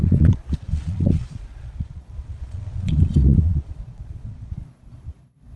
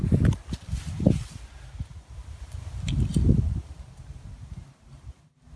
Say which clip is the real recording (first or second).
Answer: second